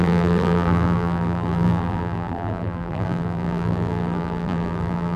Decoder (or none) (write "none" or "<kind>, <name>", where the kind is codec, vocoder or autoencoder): vocoder, BigVGAN v2